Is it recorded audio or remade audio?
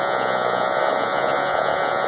remade